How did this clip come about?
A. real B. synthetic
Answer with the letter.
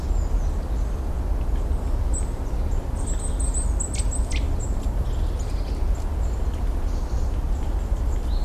A